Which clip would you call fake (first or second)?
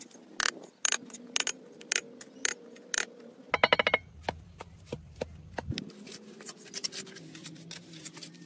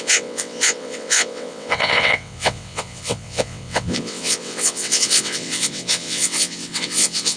second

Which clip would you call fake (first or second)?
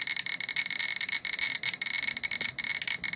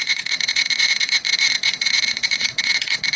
second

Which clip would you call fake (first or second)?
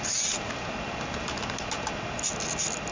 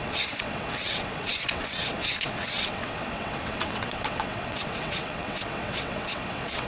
second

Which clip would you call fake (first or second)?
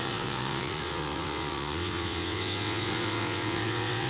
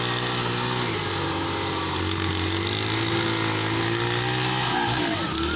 first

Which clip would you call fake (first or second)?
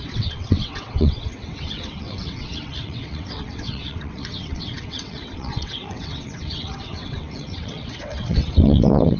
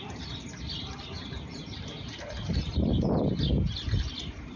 first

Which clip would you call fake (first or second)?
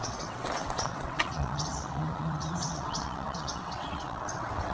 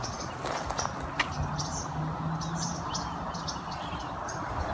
first